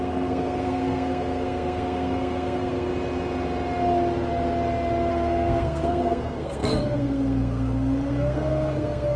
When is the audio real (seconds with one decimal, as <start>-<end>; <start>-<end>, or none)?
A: 2.9-5.1